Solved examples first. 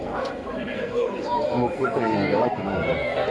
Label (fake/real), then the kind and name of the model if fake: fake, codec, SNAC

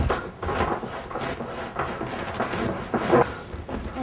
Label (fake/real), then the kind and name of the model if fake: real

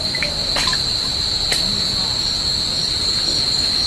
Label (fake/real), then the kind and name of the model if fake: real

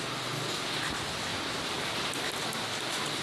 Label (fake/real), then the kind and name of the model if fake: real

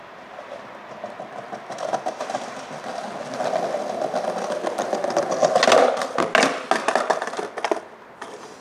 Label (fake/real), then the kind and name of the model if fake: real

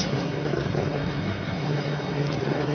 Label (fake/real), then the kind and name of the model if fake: fake, codec, SNAC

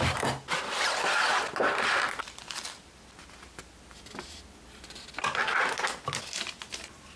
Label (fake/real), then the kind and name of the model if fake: real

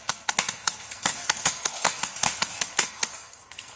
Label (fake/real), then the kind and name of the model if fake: fake, codec, SNAC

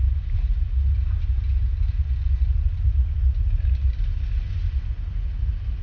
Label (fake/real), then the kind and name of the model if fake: real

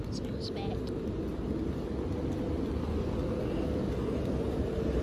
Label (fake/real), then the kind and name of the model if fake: real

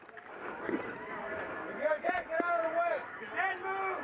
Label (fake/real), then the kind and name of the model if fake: real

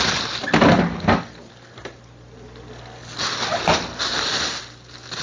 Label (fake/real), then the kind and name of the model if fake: real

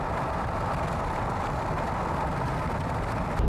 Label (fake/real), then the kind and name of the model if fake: real